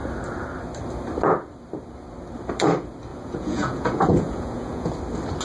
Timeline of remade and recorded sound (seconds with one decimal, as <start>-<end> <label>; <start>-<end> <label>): 0.0-3.1 recorded; 3.1-4.9 remade; 4.9-5.4 recorded